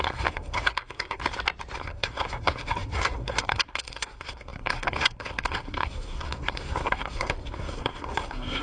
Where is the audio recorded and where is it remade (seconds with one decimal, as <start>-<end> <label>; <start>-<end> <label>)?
0.0-1.2 remade; 1.2-1.8 recorded; 1.8-8.6 remade